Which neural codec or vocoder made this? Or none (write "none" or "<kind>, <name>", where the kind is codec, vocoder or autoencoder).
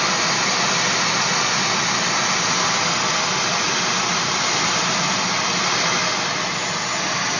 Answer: none